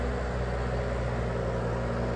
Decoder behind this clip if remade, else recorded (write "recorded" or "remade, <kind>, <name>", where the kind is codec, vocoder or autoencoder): recorded